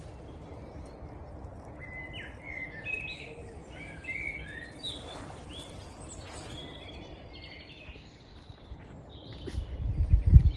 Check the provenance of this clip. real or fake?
real